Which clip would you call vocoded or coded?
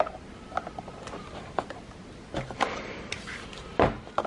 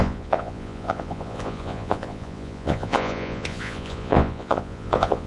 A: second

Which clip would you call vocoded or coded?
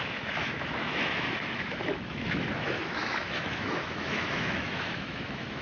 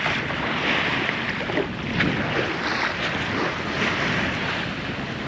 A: first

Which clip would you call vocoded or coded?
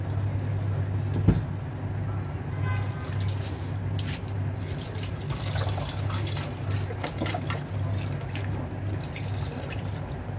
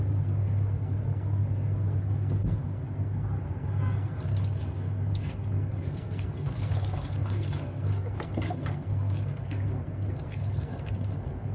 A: second